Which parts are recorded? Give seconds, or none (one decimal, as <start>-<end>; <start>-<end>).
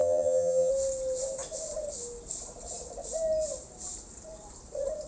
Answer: 0.7-5.1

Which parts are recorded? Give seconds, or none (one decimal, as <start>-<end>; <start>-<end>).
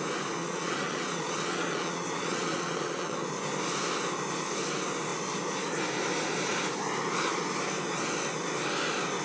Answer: 0.0-0.4; 3.2-9.2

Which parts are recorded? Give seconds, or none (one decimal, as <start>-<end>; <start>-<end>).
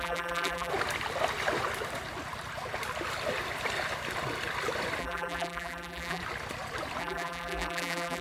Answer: 0.7-5.0; 6.2-7.0